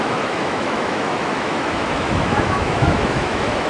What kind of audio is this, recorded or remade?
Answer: remade